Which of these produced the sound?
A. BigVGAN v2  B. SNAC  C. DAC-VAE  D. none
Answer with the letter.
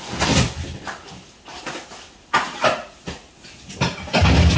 D